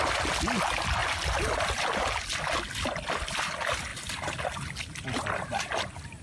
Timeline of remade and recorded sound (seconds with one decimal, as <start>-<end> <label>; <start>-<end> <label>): 0.0-6.2 recorded